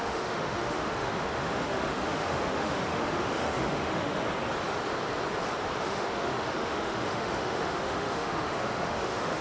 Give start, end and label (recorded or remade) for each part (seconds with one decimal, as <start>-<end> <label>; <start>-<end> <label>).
0.0-4.2 remade; 4.2-5.8 recorded; 5.8-9.4 remade